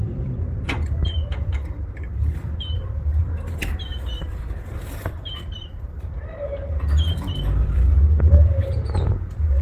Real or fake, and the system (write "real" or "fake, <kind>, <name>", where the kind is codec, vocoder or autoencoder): fake, vocoder, BigVGAN v2